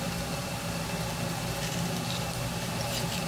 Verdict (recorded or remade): remade